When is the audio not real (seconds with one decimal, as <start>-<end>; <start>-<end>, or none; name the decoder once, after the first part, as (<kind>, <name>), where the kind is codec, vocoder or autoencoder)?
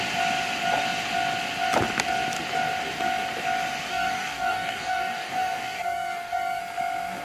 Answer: 3.9-6.6 (codec, DAC)